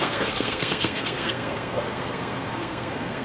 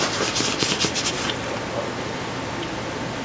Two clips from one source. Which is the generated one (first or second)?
first